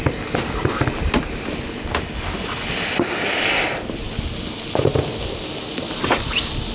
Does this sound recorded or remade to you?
recorded